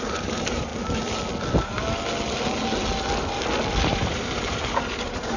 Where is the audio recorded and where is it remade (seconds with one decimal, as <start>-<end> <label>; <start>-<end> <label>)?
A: 0.0-0.7 remade; 0.7-3.9 recorded; 3.9-5.4 remade